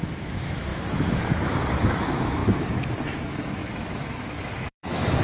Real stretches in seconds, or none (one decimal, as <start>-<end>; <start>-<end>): none